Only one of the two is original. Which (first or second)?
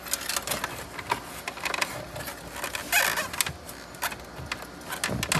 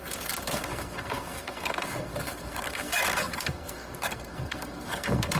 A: first